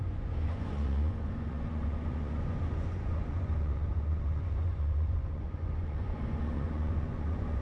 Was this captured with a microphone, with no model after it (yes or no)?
no